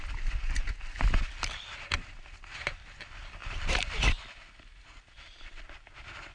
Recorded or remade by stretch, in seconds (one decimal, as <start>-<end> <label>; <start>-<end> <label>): 0.0-3.4 recorded; 3.4-3.9 remade; 3.9-6.3 recorded